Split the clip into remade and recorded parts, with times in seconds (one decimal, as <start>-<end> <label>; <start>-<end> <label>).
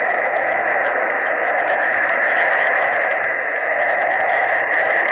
0.0-5.1 remade